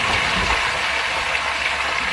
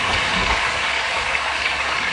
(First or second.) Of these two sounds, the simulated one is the second